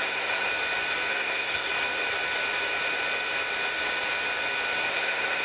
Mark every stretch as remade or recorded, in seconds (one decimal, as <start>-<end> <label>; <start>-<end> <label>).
0.0-0.5 remade; 0.5-1.1 recorded; 1.1-1.7 remade; 1.7-4.9 recorded; 4.9-5.4 remade